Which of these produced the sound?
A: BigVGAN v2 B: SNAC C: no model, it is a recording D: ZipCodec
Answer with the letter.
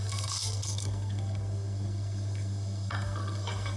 B